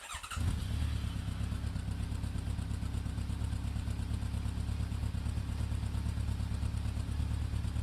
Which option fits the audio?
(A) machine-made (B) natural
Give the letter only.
B